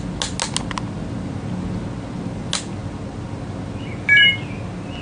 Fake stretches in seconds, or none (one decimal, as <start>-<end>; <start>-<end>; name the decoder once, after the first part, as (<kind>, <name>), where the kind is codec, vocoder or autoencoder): none

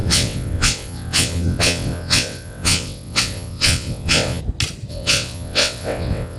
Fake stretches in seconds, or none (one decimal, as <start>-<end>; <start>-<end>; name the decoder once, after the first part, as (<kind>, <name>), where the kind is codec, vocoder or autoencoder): 0.0-4.4 (vocoder, WaveNeXt); 4.9-6.4

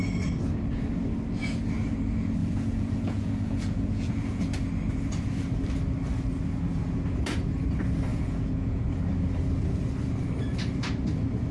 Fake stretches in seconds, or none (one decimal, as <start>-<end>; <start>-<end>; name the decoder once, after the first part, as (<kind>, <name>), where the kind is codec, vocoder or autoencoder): 2.4-4.4 (vocoder, Vocos); 8.1-8.9

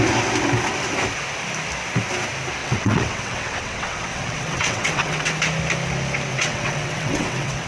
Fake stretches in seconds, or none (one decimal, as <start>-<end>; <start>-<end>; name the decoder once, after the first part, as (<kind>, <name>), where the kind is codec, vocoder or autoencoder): 2.6-5.3 (vocoder, WaveNeXt); 6.3-7.7

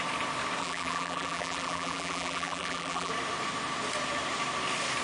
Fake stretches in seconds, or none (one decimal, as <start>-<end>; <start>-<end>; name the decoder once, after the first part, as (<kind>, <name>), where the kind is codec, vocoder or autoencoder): 0.6-3.1 (vocoder, BigVGAN v2)

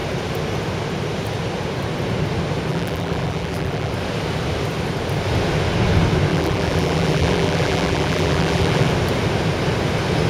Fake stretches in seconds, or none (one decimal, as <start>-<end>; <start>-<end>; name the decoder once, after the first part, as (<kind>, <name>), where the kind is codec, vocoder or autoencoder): 2.7-3.9 (vocoder, BigVGAN v2); 6.3-8.9